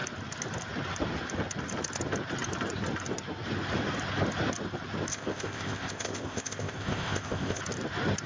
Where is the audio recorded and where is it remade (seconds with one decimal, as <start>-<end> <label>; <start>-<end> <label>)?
0.0-5.1 recorded; 5.1-7.6 remade; 7.6-8.3 recorded